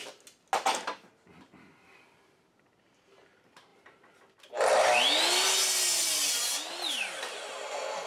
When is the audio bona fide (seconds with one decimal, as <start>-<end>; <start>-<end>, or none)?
0.0-8.1